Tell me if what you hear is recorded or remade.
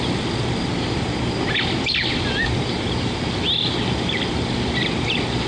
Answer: recorded